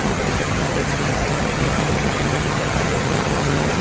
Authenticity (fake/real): fake